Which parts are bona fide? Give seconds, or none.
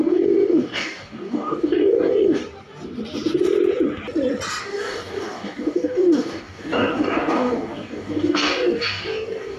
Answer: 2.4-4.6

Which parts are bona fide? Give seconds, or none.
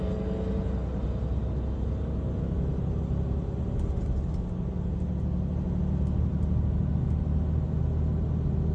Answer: 0.0-8.7